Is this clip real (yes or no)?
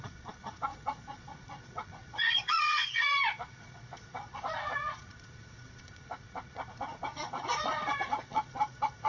no